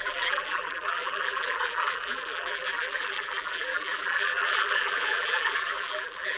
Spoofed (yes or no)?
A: yes